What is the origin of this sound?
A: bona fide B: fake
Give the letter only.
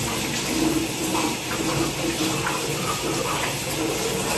A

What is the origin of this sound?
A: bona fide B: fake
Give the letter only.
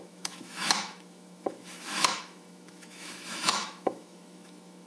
B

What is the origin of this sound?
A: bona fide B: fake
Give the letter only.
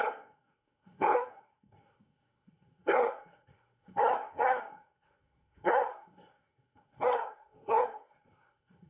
B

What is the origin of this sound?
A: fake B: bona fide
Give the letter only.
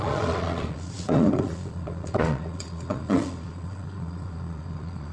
A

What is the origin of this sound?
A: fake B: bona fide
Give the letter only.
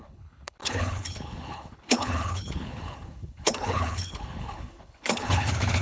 A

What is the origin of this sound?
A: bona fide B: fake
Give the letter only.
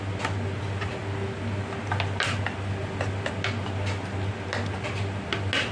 A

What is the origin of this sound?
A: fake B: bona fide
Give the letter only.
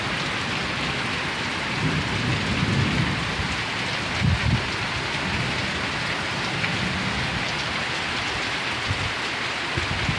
B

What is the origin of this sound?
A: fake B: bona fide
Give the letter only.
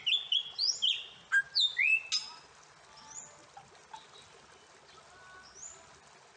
B